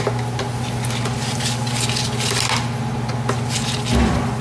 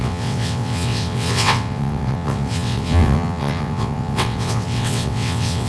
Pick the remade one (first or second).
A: second